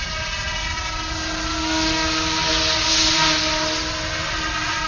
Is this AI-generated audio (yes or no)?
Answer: no